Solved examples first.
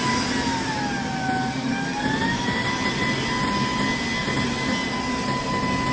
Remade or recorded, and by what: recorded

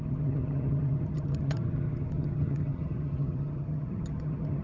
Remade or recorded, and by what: remade, vocoder, HiFi-GAN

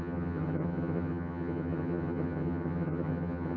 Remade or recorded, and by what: remade, vocoder, HiFi-GAN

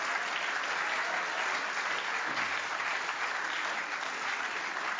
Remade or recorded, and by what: recorded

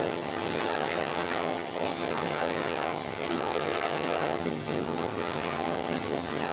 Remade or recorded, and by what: remade, vocoder, HiFi-GAN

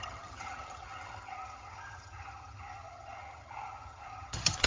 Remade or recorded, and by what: remade, vocoder, HiFi-GAN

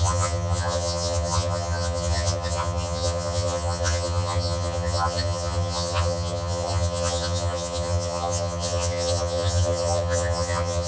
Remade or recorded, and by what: remade, vocoder, HiFi-GAN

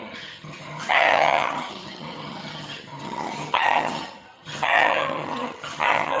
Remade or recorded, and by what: remade, vocoder, HiFi-GAN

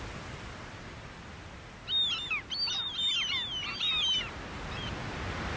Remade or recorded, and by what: recorded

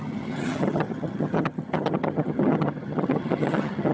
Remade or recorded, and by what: remade, vocoder, HiFi-GAN